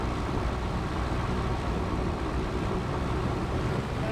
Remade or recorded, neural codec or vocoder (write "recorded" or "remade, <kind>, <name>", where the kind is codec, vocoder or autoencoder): remade, vocoder, BigVGAN v2